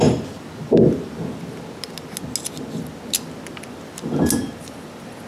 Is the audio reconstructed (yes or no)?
no